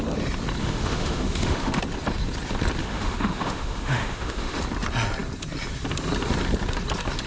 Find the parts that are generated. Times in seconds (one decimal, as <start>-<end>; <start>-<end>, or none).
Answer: 0.6-1.8; 2.8-4.6